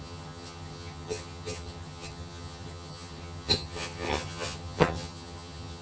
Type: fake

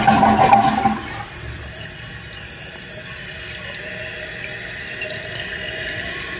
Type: real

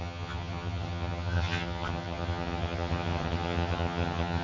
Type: fake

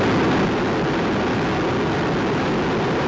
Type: real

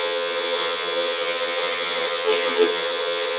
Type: fake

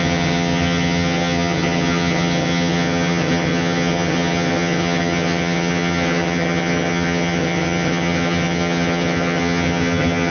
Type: fake